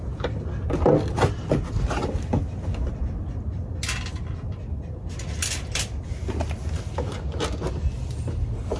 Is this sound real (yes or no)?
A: yes